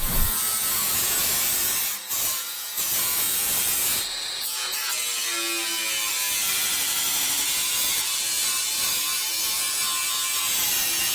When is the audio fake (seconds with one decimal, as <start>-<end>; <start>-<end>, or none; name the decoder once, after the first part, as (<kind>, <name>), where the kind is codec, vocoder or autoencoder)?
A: 0.0-1.5 (vocoder, Vocos); 2.0-4.9; 7.2-11.1